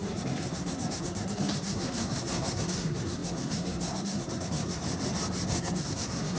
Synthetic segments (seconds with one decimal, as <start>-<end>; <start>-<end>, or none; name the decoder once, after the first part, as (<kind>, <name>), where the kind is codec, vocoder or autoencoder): 0.0-4.8 (codec, SNAC); 5.5-6.4